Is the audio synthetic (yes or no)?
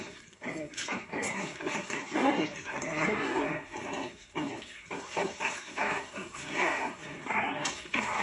yes